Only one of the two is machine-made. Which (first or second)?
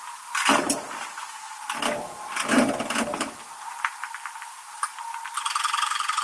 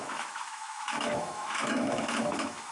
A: second